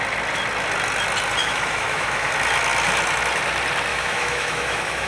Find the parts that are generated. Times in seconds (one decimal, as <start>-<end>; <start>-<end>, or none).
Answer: 1.4-2.3; 3.9-5.1